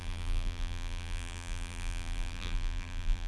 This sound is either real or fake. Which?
fake